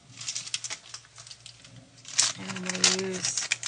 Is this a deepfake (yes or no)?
no